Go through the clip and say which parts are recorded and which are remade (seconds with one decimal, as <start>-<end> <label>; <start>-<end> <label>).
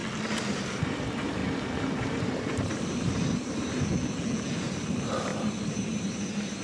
0.0-0.5 recorded; 0.5-1.4 remade; 1.4-2.0 recorded; 2.0-3.9 remade; 3.9-4.6 recorded; 4.6-6.6 remade